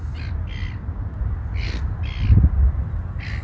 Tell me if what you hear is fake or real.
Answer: real